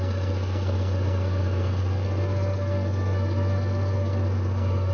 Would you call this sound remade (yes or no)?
yes